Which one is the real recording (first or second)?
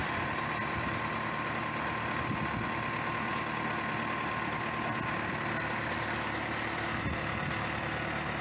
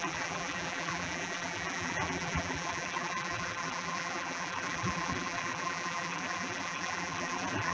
first